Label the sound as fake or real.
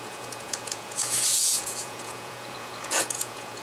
fake